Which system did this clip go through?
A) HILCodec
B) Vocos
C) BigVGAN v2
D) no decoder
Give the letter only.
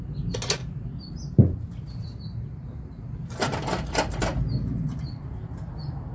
D